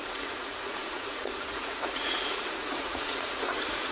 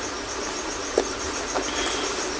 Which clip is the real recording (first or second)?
second